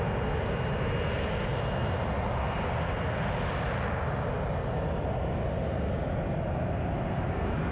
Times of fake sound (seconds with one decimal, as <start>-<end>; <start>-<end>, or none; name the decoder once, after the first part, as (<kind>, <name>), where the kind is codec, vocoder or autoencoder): none